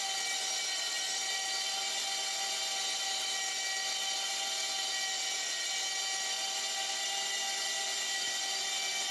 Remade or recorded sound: recorded